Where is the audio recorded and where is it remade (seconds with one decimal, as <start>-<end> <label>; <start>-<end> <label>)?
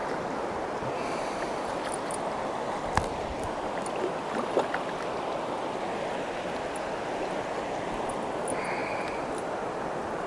0.0-10.3 recorded